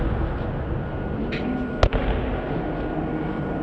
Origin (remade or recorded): recorded